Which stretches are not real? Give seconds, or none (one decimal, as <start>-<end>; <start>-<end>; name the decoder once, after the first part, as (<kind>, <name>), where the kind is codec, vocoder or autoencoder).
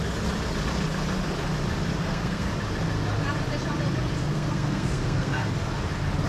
2.0-2.5 (codec, SNAC); 4.2-5.5